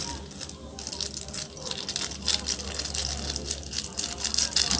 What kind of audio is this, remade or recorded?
recorded